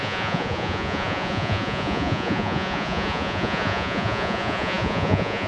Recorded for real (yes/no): no